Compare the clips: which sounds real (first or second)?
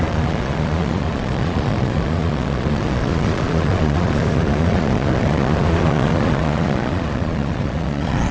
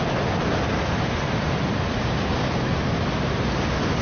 second